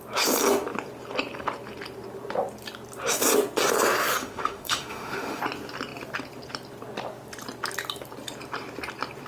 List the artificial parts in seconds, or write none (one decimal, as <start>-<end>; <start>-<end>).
4.2-5.4